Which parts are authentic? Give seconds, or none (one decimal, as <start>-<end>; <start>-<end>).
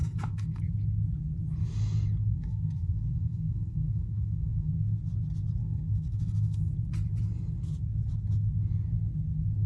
0.6-2.2; 4.7-5.6; 6.7-9.7